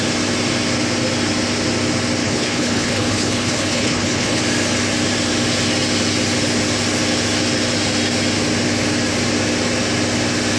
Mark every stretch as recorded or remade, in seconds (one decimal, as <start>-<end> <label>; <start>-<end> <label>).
0.0-2.2 recorded; 2.2-4.4 remade; 4.4-10.6 recorded